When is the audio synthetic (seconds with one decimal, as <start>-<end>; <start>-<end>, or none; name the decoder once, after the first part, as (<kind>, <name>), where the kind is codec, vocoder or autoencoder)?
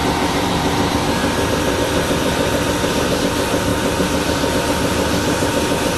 3.7-4.5 (vocoder, BigVGAN v2)